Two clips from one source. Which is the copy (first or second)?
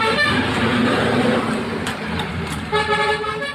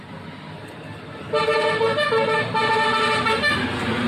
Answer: first